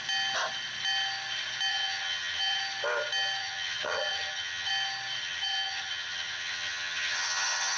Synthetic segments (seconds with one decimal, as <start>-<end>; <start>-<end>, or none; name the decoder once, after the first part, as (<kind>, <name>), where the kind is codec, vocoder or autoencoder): 1.7-2.6 (vocoder, HiFi-GAN); 3.4-4.7; 5.2-7.8

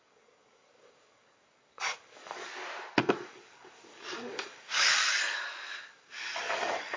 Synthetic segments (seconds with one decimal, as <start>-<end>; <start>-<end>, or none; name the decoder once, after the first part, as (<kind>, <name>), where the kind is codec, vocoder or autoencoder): 0.0-2.5 (codec, DAC); 3.1-5.0; 5.8-7.0